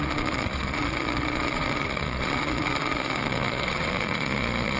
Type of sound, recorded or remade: remade